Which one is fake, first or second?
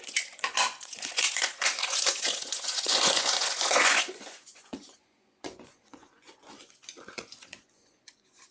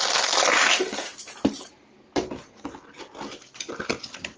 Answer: first